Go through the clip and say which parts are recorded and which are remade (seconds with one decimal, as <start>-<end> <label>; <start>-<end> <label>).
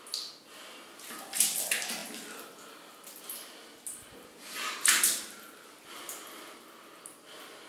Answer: 0.0-7.7 recorded